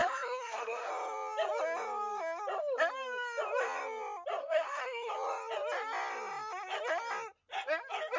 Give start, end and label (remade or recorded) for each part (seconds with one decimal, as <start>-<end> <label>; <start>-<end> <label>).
0.0-0.9 remade; 0.9-4.4 recorded; 4.4-5.1 remade; 5.1-8.2 recorded